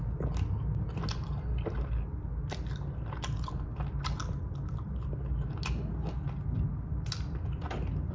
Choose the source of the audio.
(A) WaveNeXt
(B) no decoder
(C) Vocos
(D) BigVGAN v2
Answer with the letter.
B